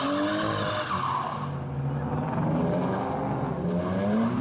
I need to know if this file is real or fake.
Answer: real